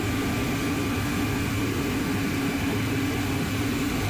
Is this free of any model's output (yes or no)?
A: yes